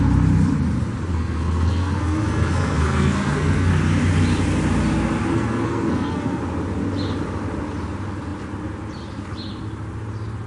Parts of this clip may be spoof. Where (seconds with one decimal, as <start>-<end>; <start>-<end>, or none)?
1.1-3.7; 5.3-6.4